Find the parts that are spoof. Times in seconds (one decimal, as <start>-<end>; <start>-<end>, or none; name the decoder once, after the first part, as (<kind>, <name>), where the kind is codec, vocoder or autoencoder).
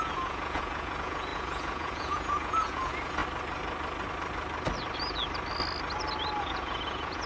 0.0-3.2 (vocoder, Vocos); 6.4-7.3